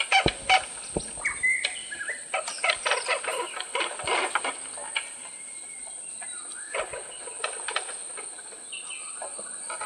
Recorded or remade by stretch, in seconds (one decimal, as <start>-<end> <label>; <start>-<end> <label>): 0.0-1.8 recorded; 1.8-2.7 remade; 2.7-3.3 recorded; 3.3-6.6 remade; 6.6-9.3 recorded; 9.3-9.9 remade